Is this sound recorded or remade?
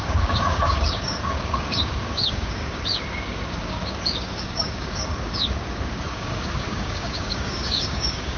remade